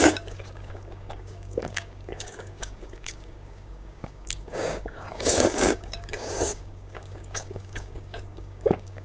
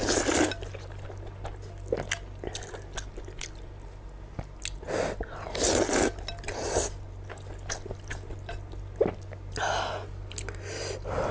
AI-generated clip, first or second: first